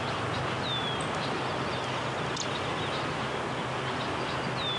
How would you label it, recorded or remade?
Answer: recorded